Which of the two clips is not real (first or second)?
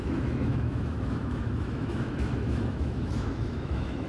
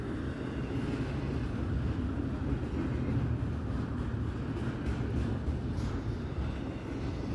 first